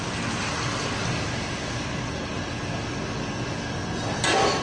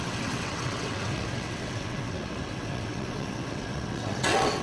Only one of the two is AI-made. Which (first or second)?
second